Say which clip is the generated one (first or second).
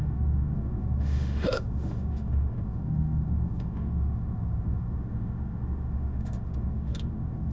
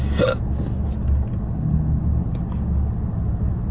first